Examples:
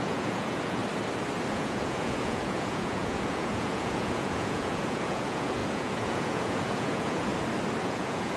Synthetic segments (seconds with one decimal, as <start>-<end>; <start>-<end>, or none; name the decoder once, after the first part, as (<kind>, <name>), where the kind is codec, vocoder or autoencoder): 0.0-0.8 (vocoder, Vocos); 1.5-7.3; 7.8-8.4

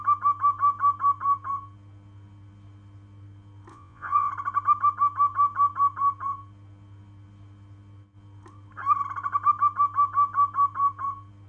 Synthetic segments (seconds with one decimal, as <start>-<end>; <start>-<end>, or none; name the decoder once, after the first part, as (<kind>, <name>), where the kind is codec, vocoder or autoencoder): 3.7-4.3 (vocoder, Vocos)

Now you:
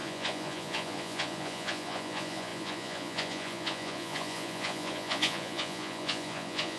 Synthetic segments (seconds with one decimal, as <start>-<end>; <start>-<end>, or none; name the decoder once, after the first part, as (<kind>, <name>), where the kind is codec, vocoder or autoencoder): 0.0-6.8 (vocoder, Vocos)

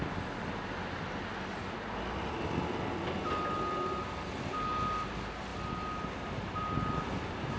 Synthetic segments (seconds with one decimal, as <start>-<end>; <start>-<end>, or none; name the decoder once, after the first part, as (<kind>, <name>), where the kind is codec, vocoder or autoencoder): none